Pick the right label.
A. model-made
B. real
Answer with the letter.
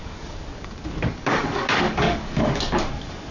A